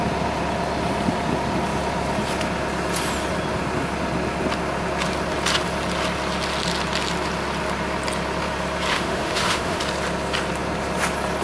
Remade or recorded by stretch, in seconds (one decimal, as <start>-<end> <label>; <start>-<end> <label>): 0.0-8.9 recorded; 8.9-9.8 remade; 9.8-11.4 recorded